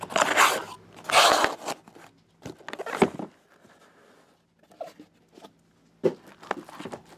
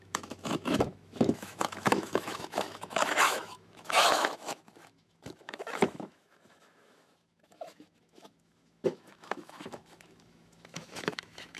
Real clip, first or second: first